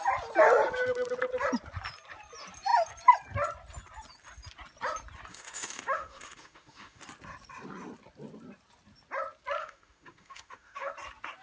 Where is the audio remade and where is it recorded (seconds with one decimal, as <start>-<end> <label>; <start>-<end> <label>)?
0.0-5.3 recorded; 5.3-7.0 remade; 7.0-9.6 recorded; 9.6-10.9 remade; 10.9-11.4 recorded